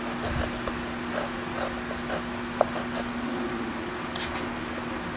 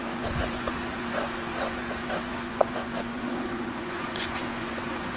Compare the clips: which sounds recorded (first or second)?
first